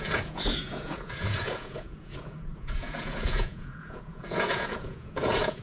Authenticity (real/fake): fake